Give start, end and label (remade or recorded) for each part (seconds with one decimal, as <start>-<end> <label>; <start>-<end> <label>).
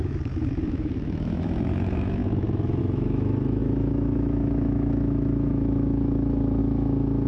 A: 0.0-7.3 remade